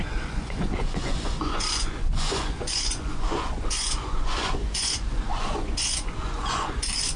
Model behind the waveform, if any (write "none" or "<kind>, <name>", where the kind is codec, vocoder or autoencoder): vocoder, Vocos